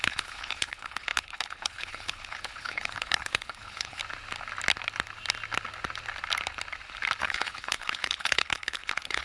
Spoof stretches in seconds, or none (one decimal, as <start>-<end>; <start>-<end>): 0.0-4.0; 7.2-9.2